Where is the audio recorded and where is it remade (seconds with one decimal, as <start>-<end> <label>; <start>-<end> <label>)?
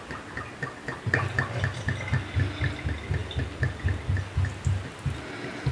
0.0-5.7 recorded